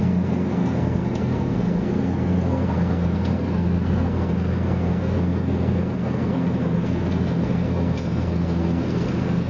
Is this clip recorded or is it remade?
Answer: remade